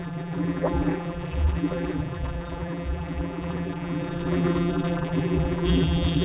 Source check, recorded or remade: remade